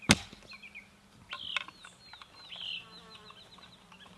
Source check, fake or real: real